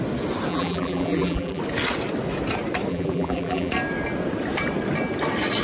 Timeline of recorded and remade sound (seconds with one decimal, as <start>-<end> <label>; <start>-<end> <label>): 0.0-0.5 recorded; 0.5-1.6 remade; 1.6-2.9 recorded; 2.9-3.7 remade; 3.7-5.6 recorded